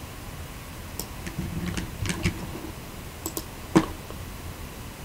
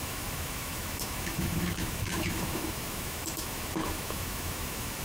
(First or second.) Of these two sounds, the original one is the first